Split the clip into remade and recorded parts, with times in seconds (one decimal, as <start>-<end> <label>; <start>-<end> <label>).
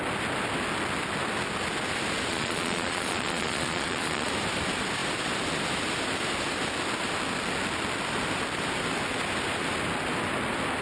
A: 0.0-2.3 recorded; 2.3-4.3 remade; 4.3-10.8 recorded